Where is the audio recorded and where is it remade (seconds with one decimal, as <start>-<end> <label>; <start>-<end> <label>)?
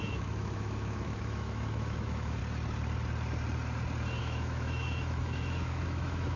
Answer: 0.0-2.4 remade; 2.4-4.2 recorded; 4.2-6.4 remade